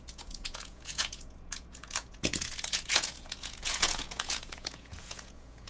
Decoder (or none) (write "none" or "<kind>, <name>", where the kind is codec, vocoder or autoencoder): vocoder, Vocos